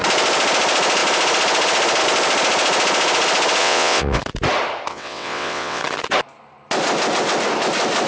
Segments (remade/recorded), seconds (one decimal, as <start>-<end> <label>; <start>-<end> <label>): 0.0-3.6 recorded; 3.6-4.2 remade; 4.2-4.9 recorded; 4.9-5.8 remade; 5.8-8.1 recorded